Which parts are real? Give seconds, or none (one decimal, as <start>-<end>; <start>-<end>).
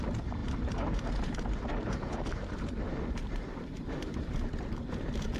none